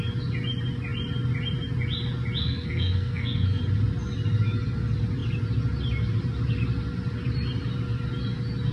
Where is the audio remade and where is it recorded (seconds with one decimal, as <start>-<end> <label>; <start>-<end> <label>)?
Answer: 0.0-2.4 recorded; 2.4-3.6 remade; 3.6-8.7 recorded